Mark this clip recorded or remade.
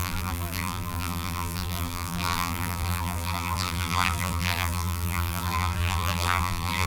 remade